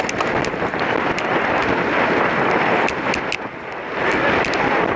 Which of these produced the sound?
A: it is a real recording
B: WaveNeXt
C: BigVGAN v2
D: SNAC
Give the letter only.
A